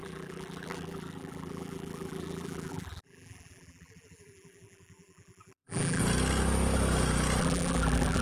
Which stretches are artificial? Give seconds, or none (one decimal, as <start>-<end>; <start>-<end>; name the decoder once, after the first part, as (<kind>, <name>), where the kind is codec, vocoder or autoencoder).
0.0-6.0 (vocoder, BigVGAN v2); 7.4-8.2